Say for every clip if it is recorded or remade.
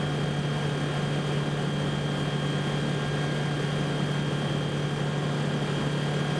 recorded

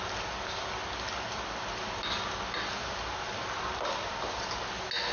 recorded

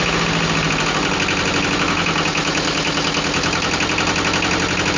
recorded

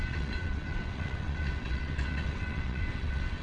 remade